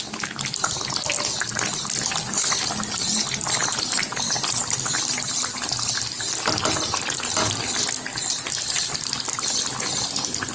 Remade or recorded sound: recorded